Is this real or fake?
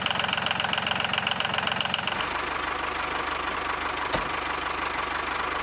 real